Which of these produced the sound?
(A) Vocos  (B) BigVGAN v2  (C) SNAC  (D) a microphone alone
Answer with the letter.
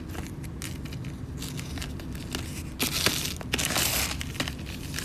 D